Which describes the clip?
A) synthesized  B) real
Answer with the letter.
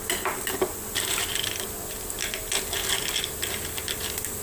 B